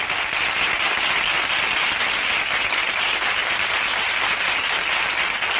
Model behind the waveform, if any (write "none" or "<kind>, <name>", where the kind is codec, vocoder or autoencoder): none